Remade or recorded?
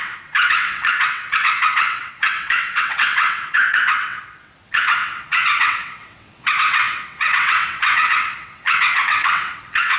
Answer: remade